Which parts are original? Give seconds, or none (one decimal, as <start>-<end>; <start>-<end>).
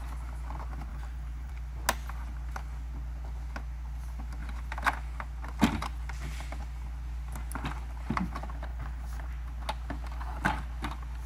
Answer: 0.0-0.9; 1.5-8.7; 9.3-11.3